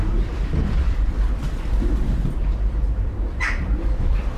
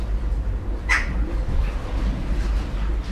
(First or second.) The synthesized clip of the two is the first